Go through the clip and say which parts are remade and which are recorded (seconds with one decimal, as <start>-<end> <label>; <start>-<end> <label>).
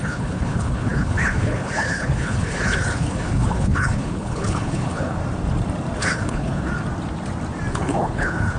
0.0-5.2 remade; 5.2-6.0 recorded; 6.0-6.7 remade; 6.7-7.7 recorded; 7.7-8.6 remade